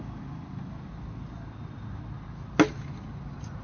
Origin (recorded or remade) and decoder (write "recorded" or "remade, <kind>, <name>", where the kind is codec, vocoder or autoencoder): recorded